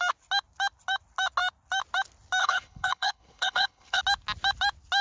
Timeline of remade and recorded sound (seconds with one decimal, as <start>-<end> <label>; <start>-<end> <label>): 0.0-2.4 recorded; 2.4-4.0 remade; 4.0-5.0 recorded